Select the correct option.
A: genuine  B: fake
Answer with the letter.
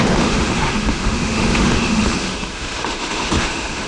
B